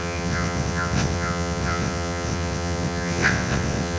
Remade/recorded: remade